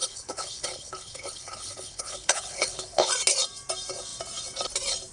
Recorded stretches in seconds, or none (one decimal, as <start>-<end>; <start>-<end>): 3.1-5.1